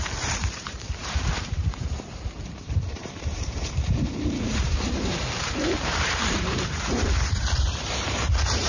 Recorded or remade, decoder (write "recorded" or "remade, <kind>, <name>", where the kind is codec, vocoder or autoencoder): remade, vocoder, BigVGAN v2